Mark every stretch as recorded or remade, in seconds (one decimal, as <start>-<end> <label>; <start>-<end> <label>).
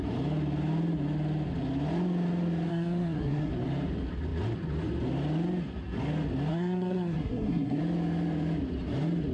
0.0-2.7 recorded; 2.7-3.5 remade; 3.5-6.5 recorded; 6.5-7.8 remade; 7.8-9.3 recorded